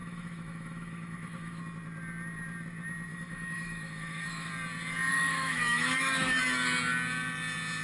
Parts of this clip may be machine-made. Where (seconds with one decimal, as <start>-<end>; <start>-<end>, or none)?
0.0-1.6; 3.1-4.5; 5.1-6.4